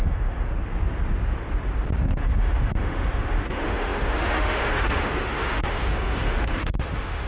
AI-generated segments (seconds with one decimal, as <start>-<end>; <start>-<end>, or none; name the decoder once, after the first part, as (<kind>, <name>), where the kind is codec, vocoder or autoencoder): 0.0-0.5 (autoencoder, DAC-VAE); 2.0-7.3